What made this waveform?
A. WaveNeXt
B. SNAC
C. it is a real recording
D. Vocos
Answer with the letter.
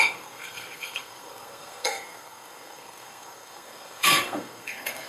B